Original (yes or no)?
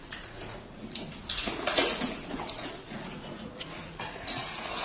no